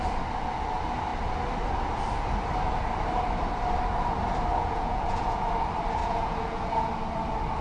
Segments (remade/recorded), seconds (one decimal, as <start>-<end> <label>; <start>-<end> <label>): 0.0-4.5 recorded; 4.5-5.5 remade; 5.5-6.0 recorded; 6.0-6.9 remade; 6.9-7.6 recorded